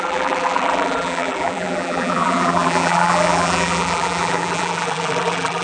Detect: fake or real fake